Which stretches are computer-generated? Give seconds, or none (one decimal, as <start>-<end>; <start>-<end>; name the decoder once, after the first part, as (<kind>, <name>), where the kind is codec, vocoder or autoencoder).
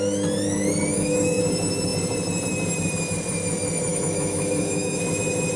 0.9-1.4 (autoencoder, DAC-VAE); 3.9-5.0